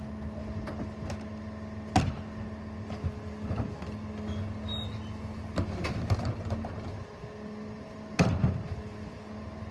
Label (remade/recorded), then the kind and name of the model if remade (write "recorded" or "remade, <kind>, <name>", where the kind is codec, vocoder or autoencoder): recorded